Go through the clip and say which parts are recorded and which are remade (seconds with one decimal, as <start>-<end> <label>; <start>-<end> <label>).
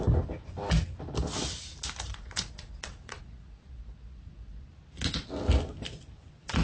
0.0-2.1 recorded; 2.1-4.7 remade; 4.7-6.6 recorded